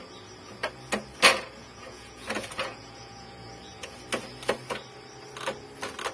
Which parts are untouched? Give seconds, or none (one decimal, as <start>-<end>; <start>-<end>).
0.0-1.6; 4.0-6.1